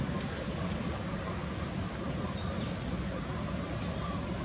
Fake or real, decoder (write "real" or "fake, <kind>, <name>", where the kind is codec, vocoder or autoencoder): real